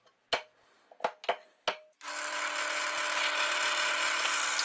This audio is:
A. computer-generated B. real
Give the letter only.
B